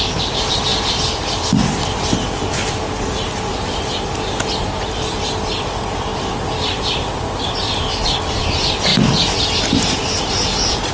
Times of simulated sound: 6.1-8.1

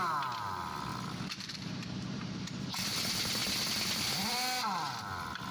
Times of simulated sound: 0.9-3.0

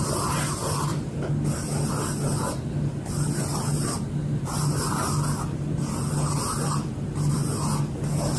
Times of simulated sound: none

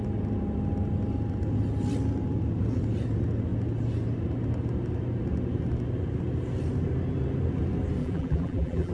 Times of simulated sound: 8.0-8.9